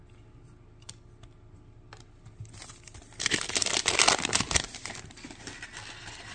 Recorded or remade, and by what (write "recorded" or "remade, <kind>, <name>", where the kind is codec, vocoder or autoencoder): recorded